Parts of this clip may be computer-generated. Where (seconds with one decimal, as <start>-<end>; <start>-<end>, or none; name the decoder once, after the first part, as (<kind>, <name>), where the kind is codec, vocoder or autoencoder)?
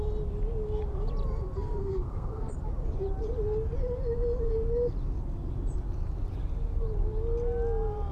1.8-2.5 (codec, SNAC)